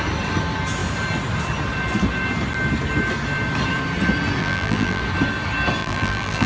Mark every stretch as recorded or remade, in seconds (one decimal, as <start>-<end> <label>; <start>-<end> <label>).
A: 0.0-4.4 recorded; 4.4-5.0 remade; 5.0-5.8 recorded; 5.8-6.5 remade